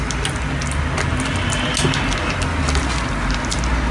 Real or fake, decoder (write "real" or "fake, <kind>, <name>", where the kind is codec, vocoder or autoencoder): real